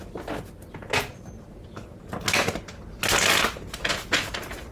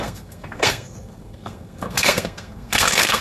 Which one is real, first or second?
first